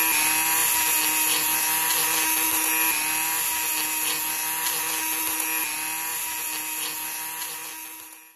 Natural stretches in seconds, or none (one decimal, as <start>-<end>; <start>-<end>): 0.0-8.4